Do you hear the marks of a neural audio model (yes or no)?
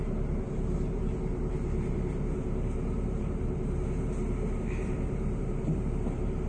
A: yes